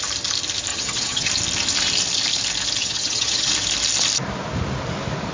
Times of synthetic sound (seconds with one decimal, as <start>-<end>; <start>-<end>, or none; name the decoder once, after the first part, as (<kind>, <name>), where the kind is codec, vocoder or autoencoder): 0.7-1.3 (vocoder, HiFi-GAN); 2.8-3.5